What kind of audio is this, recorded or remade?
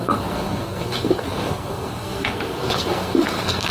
remade